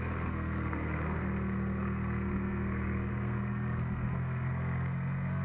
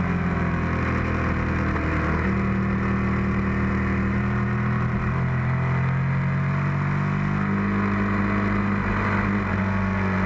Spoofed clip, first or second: first